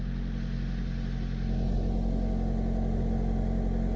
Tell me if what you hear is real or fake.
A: real